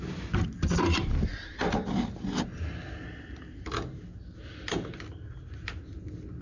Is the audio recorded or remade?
recorded